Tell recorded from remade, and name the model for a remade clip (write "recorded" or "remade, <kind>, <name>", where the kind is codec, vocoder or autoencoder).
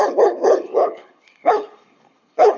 remade, codec, HILCodec